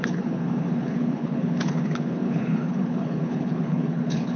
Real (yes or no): no